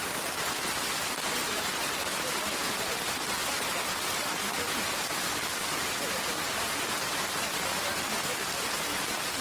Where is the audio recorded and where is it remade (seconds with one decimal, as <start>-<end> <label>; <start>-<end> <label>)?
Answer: 0.0-9.4 recorded